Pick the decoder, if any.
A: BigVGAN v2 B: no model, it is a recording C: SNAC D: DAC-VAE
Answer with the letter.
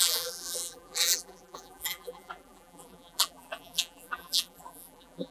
A